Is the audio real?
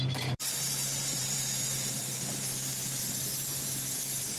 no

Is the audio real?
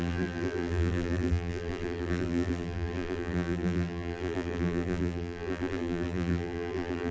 no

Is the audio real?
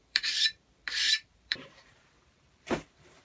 no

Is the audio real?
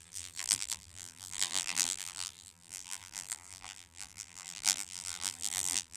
no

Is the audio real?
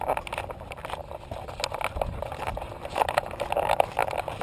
yes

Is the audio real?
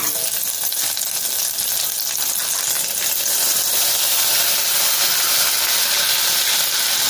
yes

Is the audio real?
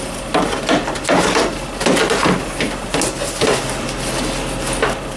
yes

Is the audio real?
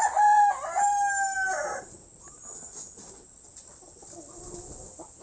yes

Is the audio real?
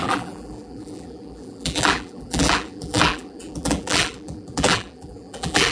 no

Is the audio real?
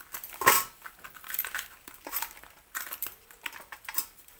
no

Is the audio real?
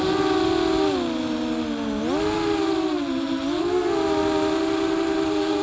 yes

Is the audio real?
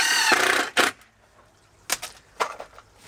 yes